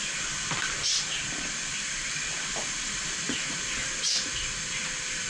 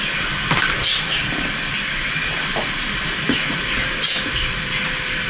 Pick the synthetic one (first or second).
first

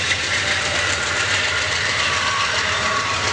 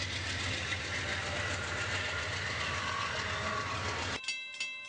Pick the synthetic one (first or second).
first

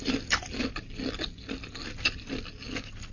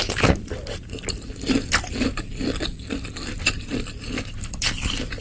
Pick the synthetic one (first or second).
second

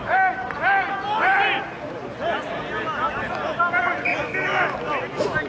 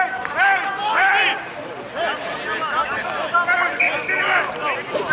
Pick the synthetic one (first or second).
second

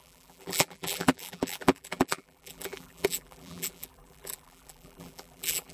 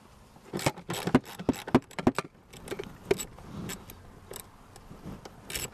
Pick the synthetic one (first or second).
first